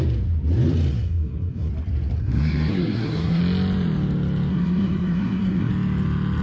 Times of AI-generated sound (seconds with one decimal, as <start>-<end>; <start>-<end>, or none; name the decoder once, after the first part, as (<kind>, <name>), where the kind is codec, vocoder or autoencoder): 0.9-1.7 (codec, SNAC); 2.2-3.4; 4.5-5.7